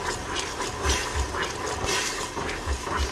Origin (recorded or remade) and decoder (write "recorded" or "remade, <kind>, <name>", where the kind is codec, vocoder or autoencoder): recorded